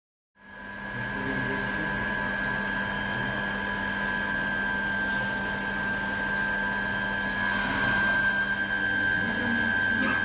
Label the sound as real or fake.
real